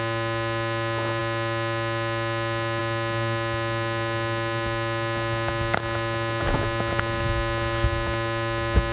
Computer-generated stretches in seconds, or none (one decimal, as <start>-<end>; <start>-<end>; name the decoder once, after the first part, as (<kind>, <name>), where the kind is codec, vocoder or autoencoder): none